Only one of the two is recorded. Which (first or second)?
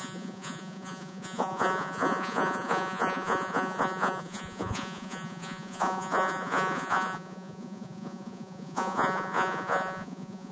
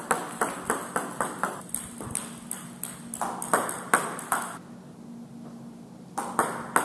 second